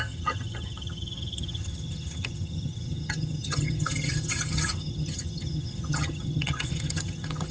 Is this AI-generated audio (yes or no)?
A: yes